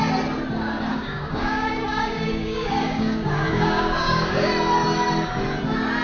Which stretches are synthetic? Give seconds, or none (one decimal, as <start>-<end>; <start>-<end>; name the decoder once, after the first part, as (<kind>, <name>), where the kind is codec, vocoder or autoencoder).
0.9-4.5 (codec, DAC)